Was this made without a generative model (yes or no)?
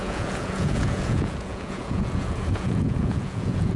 no